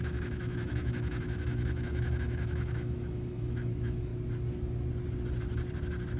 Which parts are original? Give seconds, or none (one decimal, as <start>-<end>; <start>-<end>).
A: 4.1-6.2